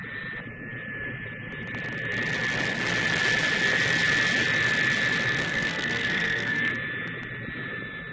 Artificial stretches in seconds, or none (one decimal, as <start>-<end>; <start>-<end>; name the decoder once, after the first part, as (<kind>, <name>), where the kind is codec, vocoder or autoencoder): 5.4-6.7 (codec, SNAC)